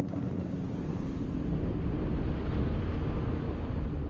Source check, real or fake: real